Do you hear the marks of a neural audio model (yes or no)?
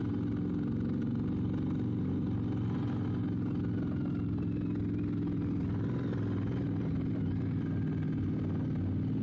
no